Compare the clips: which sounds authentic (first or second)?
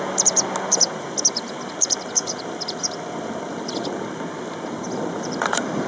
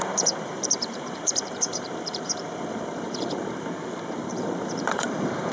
first